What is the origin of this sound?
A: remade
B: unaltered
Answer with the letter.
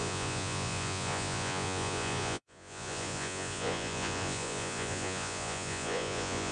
A